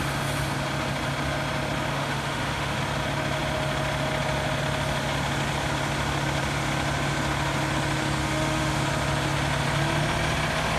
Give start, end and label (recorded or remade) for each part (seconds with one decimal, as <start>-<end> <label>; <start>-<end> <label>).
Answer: 0.0-1.9 recorded; 1.9-2.8 remade; 2.8-8.2 recorded; 8.2-8.8 remade; 8.8-10.8 recorded